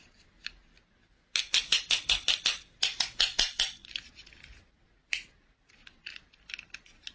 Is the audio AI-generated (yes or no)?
no